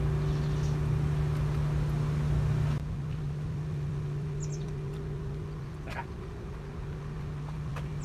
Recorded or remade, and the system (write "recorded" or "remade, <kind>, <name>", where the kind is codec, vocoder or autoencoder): recorded